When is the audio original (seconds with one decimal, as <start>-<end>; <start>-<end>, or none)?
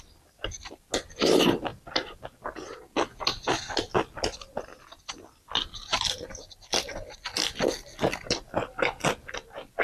0.0-1.7; 2.8-9.8